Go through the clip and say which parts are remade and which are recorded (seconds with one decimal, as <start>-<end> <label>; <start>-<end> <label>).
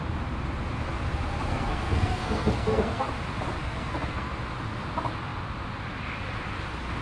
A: 0.0-1.5 recorded; 1.5-3.1 remade; 3.1-3.6 recorded; 3.6-4.3 remade; 4.3-7.0 recorded